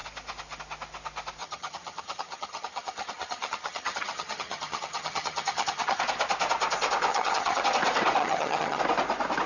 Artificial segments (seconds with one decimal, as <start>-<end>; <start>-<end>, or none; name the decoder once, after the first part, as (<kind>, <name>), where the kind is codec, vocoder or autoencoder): 1.4-6.0 (vocoder, HiFi-GAN); 7.1-7.6; 8.2-8.8